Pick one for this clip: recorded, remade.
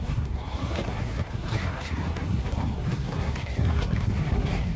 remade